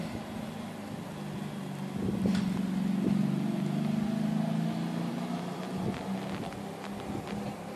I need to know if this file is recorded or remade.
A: recorded